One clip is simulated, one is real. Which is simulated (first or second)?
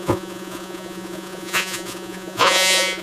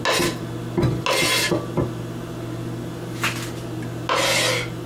first